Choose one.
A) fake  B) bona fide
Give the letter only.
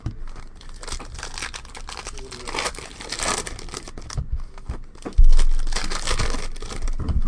B